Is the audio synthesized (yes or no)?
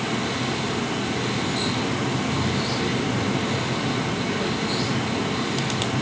no